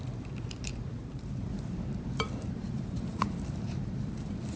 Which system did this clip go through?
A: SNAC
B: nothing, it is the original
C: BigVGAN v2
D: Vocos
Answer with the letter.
C